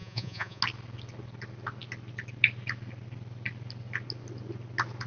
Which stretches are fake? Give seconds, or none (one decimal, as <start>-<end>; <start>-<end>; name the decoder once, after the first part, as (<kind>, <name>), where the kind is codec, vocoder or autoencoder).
0.0-0.6 (vocoder, Vocos)